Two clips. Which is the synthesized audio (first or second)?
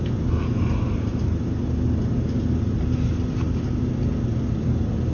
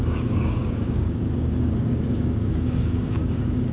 second